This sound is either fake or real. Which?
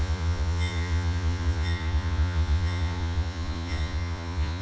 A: fake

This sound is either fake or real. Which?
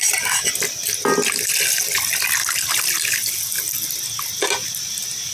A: real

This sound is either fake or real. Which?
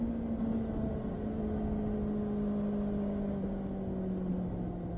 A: real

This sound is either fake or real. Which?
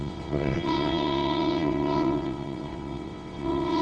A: fake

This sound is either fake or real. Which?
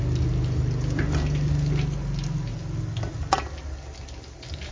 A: real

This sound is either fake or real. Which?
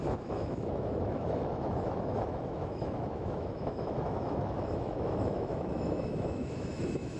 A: fake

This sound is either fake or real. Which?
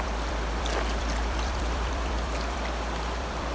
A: fake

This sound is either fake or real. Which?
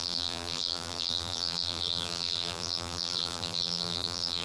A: fake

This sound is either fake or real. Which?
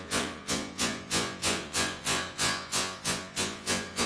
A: fake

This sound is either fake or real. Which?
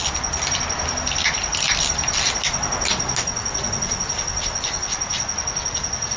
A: real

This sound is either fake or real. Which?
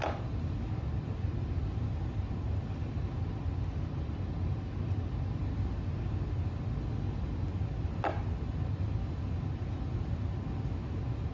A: real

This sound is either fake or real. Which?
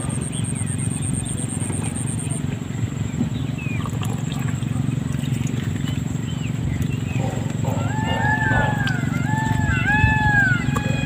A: real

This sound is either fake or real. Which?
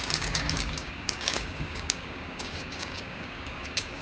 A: fake